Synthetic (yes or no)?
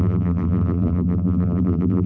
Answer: yes